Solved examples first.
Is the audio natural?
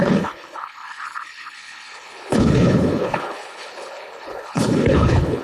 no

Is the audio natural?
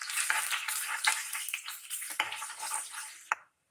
yes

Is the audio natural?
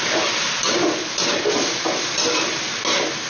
yes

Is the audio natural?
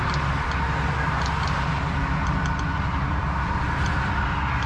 yes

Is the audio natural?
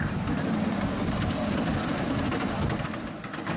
yes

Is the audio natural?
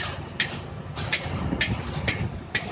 yes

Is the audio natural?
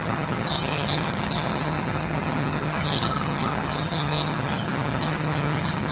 no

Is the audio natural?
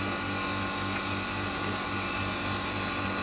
yes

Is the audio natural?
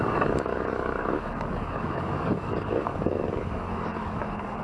no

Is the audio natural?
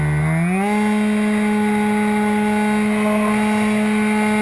yes